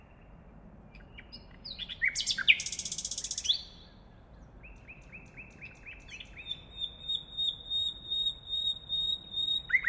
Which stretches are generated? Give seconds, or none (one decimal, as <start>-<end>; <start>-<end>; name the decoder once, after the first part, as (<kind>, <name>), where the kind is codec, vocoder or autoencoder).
none